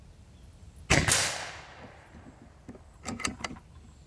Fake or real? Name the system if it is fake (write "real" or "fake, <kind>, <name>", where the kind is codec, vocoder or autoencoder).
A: real